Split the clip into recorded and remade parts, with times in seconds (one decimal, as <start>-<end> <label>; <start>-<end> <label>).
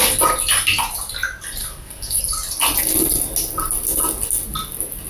0.0-1.6 recorded; 1.6-2.2 remade; 2.2-5.1 recorded